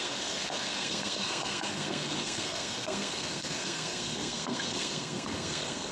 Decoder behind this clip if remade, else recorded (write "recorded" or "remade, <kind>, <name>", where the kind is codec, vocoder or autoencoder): remade, codec, SNAC